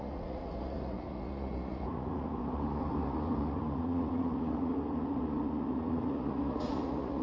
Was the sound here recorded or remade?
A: remade